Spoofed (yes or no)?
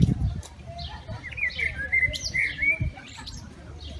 yes